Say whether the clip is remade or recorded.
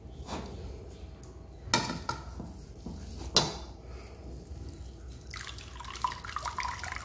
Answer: recorded